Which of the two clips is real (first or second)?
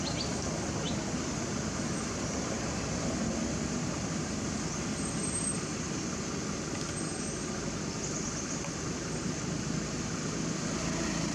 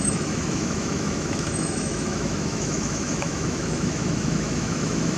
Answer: first